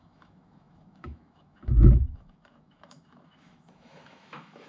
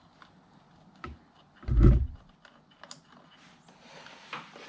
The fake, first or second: first